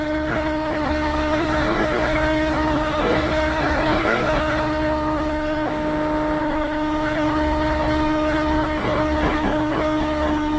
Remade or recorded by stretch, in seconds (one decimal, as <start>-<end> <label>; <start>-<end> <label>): 0.0-5.7 remade; 5.7-6.4 recorded; 6.4-10.6 remade